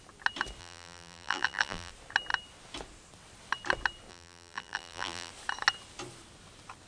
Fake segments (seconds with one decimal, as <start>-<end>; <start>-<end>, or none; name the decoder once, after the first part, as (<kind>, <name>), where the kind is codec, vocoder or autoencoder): 0.6-1.9 (vocoder, BigVGAN v2); 4.1-5.3

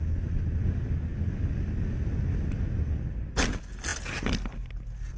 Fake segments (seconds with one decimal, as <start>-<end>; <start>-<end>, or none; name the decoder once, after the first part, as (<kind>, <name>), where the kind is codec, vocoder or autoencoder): none